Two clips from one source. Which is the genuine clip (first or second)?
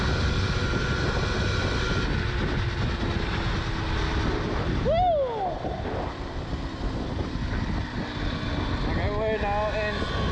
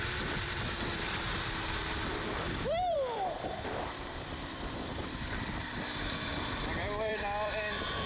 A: first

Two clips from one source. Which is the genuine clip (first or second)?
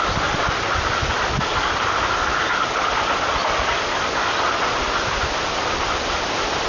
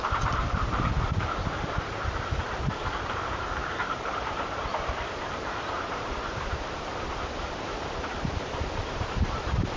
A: first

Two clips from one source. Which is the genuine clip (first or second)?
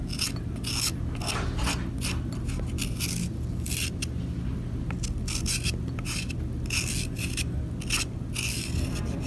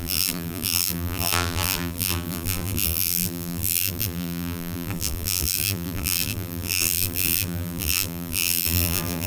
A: first